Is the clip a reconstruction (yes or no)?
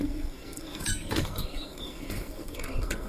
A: yes